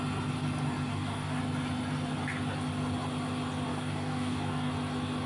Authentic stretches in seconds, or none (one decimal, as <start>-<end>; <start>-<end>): 0.0-0.9; 1.4-3.7; 4.7-5.3